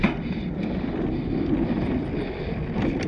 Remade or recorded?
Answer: recorded